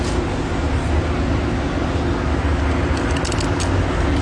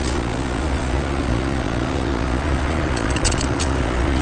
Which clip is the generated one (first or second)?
second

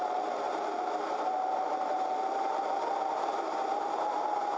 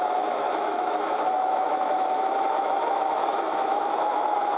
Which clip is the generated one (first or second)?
second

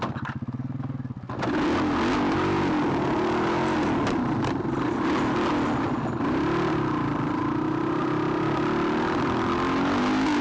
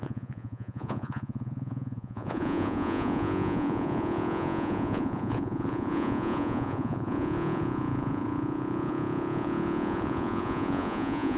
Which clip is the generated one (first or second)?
second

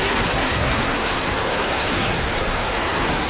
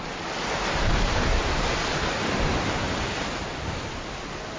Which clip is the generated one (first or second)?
first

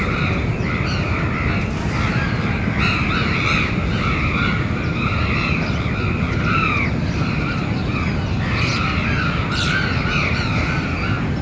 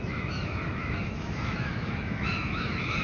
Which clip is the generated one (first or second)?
second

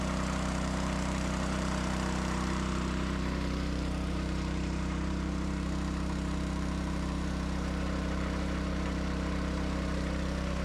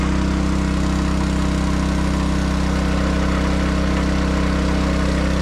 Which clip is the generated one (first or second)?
first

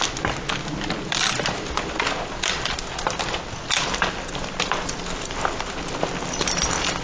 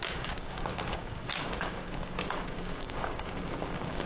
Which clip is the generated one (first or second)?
second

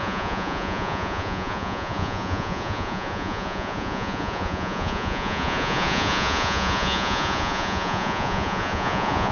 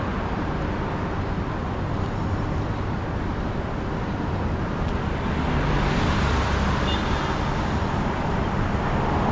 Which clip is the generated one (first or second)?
first